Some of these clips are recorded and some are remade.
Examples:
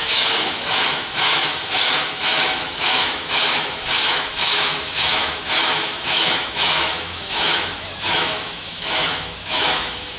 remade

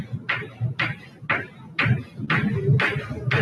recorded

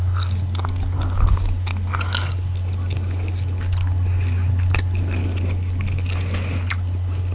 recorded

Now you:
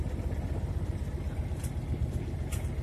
recorded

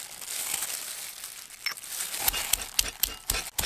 recorded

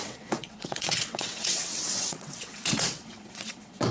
remade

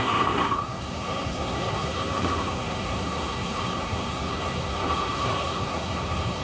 remade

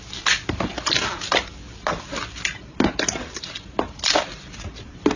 recorded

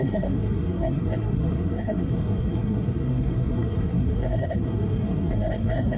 remade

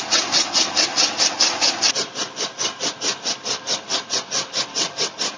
remade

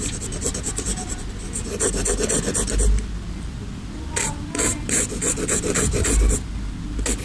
recorded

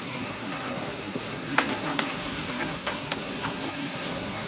remade